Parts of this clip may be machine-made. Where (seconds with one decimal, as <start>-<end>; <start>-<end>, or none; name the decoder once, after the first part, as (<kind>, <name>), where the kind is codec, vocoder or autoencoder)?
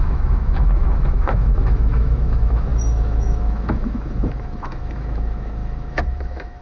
0.0-6.6 (autoencoder, DAC-VAE)